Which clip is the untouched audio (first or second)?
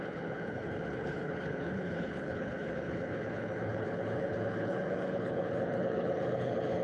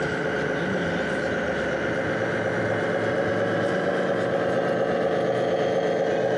second